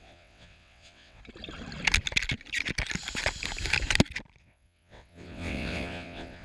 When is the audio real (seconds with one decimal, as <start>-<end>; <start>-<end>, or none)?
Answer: 1.2-4.4